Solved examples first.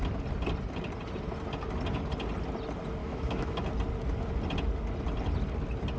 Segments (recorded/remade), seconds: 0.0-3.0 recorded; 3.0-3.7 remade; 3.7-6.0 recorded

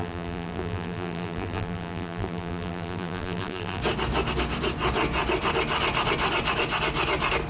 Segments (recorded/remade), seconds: 0.0-3.8 remade; 3.8-7.5 recorded

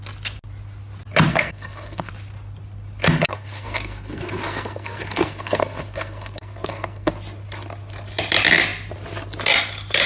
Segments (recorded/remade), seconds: 0.0-1.3 recorded; 1.3-2.1 remade; 2.1-3.0 recorded; 3.0-7.1 remade; 7.1-10.1 recorded

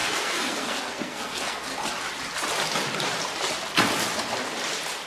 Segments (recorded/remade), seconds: 0.0-1.7 remade; 1.7-5.1 recorded

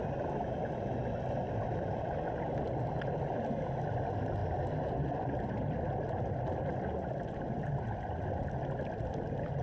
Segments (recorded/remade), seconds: 0.0-9.6 recorded